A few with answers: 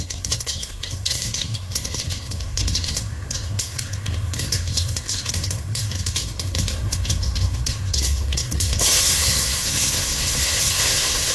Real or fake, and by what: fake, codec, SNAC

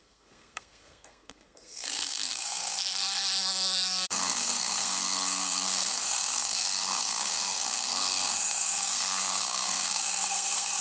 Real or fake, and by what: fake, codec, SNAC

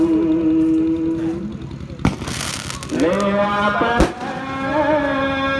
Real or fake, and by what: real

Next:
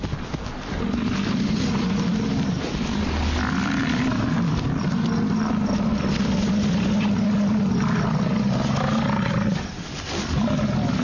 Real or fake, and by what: real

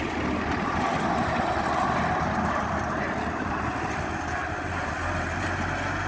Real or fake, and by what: real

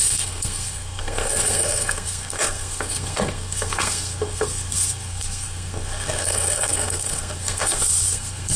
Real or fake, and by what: fake, codec, SNAC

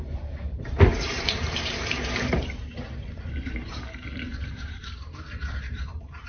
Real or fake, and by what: fake, vocoder, BigVGAN v2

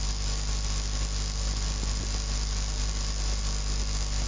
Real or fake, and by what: real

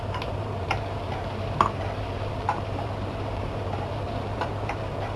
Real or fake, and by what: fake, vocoder, BigVGAN v2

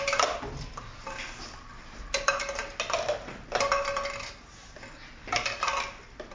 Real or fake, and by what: real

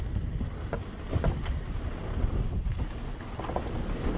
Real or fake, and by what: real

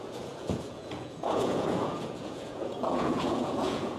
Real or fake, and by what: fake, vocoder, Vocos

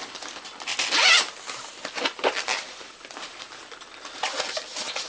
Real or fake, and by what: real